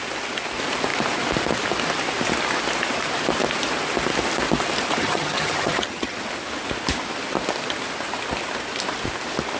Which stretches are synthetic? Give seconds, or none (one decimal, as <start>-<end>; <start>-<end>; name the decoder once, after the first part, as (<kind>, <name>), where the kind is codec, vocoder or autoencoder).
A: 5.0-6.2 (vocoder, HiFi-GAN)